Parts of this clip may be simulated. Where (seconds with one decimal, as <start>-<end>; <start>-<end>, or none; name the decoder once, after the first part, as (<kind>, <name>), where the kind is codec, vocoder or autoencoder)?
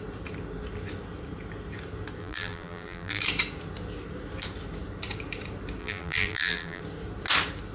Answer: 2.2-3.2 (vocoder, BigVGAN v2); 5.8-6.8